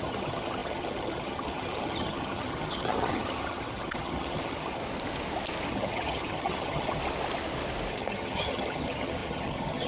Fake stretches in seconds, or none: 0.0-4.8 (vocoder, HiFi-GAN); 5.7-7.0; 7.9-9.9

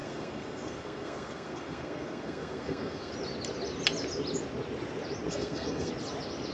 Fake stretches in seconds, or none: 0.0-3.1 (codec, SNAC); 5.3-5.9

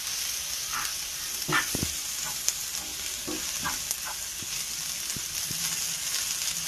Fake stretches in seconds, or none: 2.9-3.6 (vocoder, BigVGAN v2)